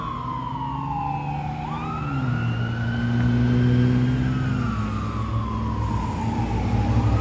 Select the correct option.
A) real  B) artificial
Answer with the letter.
A